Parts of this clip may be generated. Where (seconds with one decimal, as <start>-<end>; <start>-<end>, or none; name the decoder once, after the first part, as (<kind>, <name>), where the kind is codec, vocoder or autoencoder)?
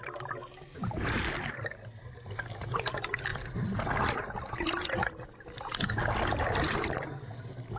none